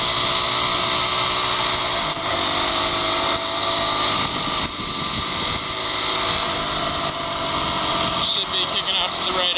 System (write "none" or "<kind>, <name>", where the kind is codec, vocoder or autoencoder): none